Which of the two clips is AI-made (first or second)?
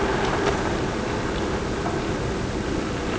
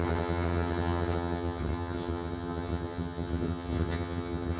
second